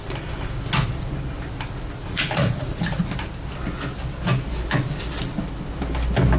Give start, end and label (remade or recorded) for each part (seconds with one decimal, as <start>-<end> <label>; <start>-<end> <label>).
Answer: 0.0-2.0 recorded; 2.0-3.0 remade; 3.0-6.4 recorded